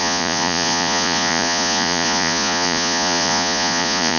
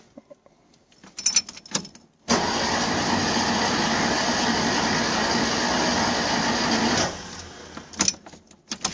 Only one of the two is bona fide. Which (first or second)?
second